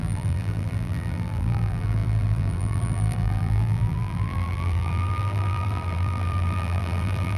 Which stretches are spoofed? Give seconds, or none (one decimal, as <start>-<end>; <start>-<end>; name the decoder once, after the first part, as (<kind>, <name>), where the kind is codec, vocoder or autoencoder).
0.0-7.4 (vocoder, BigVGAN v2)